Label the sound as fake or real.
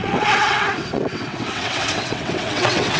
fake